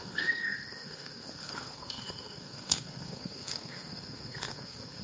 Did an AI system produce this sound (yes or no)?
yes